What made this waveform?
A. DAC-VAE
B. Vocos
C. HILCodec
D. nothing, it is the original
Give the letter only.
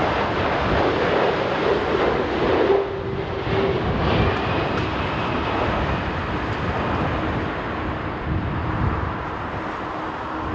D